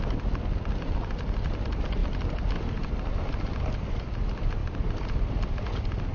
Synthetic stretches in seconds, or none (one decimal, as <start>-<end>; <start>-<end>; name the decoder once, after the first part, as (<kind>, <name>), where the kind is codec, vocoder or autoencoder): 2.0-3.7 (vocoder, BigVGAN v2); 4.6-5.6